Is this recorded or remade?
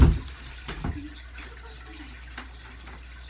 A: recorded